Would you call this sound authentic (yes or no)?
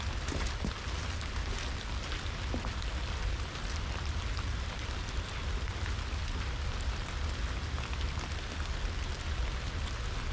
yes